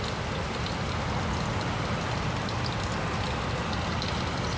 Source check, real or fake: real